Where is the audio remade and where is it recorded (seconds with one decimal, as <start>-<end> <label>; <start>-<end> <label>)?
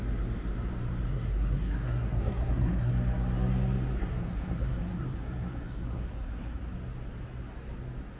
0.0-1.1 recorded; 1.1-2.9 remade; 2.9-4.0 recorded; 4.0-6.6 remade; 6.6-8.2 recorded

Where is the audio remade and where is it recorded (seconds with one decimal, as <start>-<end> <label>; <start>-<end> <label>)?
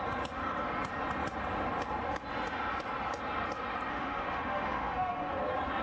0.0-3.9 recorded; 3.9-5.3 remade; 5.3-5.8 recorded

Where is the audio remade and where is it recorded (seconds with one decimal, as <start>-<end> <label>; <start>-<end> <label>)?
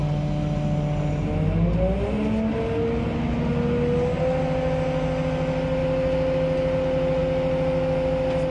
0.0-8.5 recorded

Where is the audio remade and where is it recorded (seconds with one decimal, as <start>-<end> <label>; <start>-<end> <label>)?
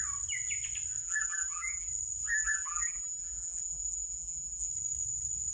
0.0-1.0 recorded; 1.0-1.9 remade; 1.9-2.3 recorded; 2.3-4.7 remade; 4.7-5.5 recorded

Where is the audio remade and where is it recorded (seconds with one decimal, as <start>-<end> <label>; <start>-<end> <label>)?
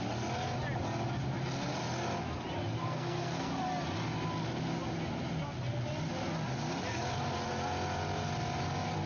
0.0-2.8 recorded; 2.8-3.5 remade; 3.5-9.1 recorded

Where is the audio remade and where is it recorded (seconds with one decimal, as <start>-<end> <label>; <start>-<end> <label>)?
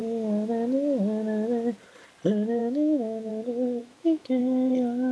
0.0-2.6 recorded; 2.6-3.3 remade; 3.3-3.8 recorded; 3.8-4.4 remade; 4.4-5.1 recorded